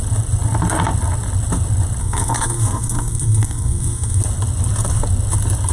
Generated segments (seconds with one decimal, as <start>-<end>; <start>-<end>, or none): 2.0-4.2